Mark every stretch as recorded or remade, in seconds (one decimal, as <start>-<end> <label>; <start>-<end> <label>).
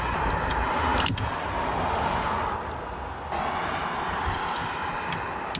0.0-0.9 recorded; 0.9-4.3 remade; 4.3-5.6 recorded